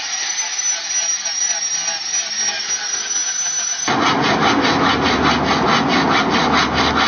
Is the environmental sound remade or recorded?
recorded